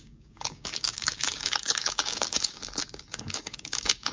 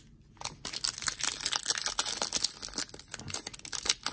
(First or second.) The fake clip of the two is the first